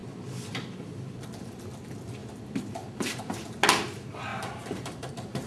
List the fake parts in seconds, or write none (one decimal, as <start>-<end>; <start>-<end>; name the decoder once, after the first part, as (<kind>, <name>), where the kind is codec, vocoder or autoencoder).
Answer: 4.3-5.1 (vocoder, BigVGAN v2)